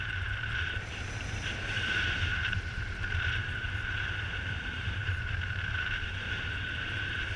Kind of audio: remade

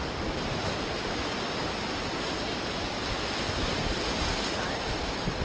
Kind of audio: recorded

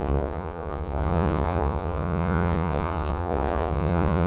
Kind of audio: remade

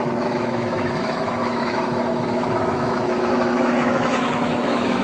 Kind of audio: remade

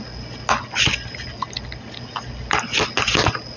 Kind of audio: recorded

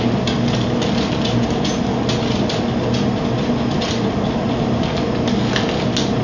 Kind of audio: recorded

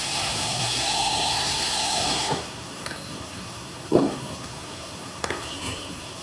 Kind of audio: remade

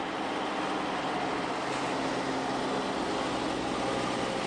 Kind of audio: recorded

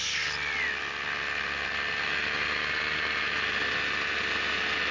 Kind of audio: recorded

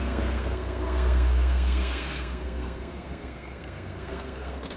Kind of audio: remade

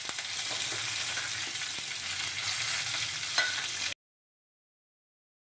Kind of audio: recorded